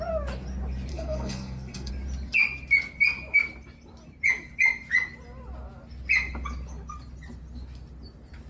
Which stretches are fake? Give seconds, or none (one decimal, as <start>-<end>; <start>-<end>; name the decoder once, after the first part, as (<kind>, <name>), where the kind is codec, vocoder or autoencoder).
0.9-1.9 (codec, SNAC)

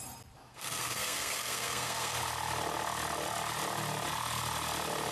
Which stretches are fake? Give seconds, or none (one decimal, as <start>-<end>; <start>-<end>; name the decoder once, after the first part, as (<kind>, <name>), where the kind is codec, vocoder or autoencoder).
0.5-2.2 (codec, SNAC)

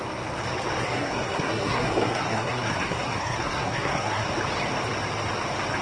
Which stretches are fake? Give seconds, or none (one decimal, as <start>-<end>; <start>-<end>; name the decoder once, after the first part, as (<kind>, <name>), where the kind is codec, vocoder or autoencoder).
0.8-4.3 (codec, SNAC)

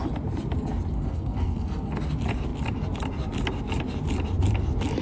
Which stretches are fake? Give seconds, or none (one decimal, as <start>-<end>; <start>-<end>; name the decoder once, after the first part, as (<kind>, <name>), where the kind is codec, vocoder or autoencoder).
0.9-1.9 (codec, SNAC)

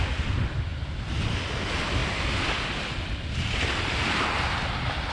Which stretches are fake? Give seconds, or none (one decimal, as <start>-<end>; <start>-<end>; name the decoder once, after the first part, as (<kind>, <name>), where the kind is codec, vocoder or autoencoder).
none

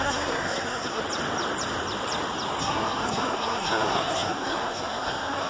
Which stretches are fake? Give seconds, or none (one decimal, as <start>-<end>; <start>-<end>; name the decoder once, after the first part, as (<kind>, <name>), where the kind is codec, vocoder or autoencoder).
0.0-1.0 (codec, SNAC); 2.6-5.5

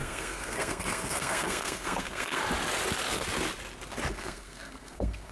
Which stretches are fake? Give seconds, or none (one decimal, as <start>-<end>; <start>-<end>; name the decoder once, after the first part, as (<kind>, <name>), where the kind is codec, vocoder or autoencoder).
0.0-2.4 (codec, SNAC); 4.1-5.3